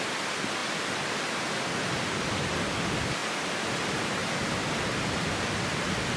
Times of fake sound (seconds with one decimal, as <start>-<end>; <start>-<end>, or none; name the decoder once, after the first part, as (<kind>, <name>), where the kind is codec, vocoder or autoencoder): 0.0-0.6 (vocoder, BigVGAN v2); 1.9-3.2; 3.7-6.2